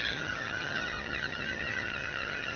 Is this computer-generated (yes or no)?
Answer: yes